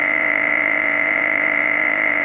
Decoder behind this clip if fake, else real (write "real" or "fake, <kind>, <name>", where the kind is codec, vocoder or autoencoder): fake, vocoder, BigVGAN v2